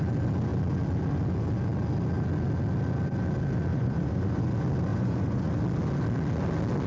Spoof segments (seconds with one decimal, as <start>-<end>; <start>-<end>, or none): 3.7-4.4; 4.9-5.5